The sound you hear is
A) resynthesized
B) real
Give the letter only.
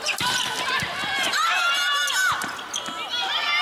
B